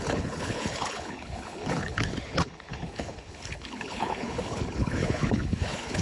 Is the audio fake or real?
fake